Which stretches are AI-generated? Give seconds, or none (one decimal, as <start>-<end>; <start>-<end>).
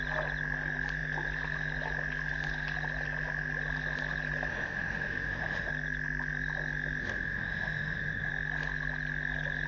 4.5-5.7; 7.0-8.3